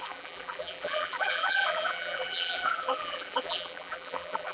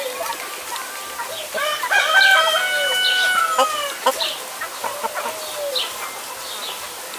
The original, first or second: second